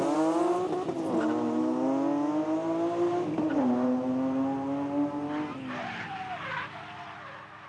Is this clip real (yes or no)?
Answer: yes